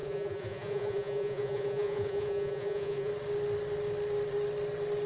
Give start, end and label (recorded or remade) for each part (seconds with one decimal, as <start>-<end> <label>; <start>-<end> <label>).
0.0-3.1 remade; 3.1-5.1 recorded